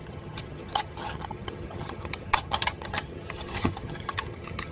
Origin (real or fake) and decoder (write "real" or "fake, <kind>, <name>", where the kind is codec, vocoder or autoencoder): fake, vocoder, HiFi-GAN